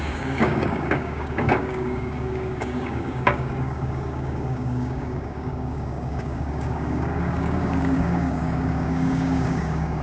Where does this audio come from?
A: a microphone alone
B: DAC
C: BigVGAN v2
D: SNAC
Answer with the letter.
B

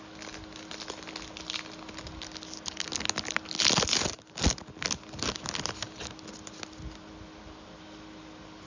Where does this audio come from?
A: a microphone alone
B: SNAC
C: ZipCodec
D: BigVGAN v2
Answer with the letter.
A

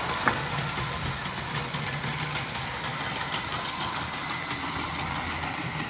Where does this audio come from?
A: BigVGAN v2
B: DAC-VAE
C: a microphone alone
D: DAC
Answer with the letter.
C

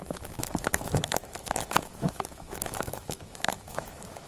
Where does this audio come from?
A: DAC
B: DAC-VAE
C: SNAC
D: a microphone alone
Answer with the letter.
B